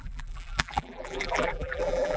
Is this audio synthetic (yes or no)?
yes